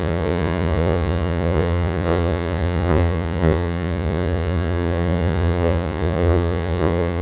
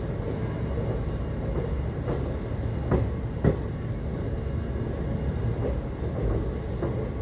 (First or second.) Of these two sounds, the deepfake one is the first